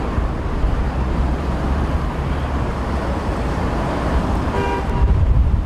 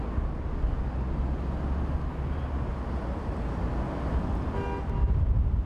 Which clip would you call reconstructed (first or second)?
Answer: first